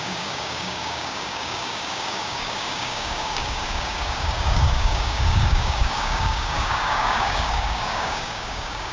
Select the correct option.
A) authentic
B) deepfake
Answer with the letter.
B